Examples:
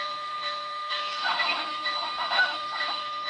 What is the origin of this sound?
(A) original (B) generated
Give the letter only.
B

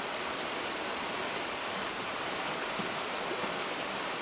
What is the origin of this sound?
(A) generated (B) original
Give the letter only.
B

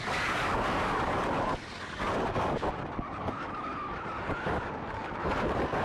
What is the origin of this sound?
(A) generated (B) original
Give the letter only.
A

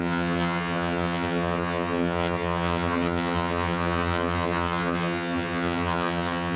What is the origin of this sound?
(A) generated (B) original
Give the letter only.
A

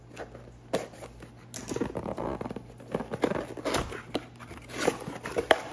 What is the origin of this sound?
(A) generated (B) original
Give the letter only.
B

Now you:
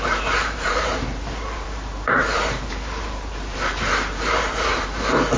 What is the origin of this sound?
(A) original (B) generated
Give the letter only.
B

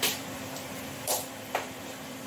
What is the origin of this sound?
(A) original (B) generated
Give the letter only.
B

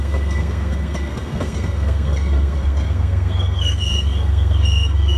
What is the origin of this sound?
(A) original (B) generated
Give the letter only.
B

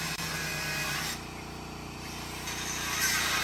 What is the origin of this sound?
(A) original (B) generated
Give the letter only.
B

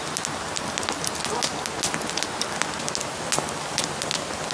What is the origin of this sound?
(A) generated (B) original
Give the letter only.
B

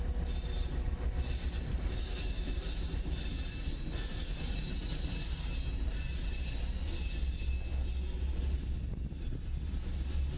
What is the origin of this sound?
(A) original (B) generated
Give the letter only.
A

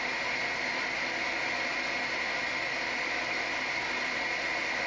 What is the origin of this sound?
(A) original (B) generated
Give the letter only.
A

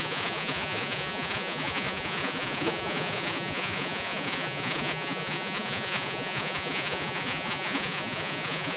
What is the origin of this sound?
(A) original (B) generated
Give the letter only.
B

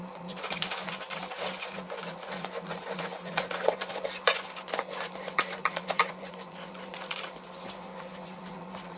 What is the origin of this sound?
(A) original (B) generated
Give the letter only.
B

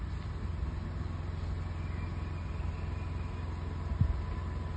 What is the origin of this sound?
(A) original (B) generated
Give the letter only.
A